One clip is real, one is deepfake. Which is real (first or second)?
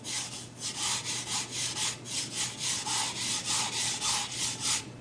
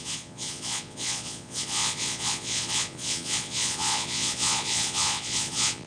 first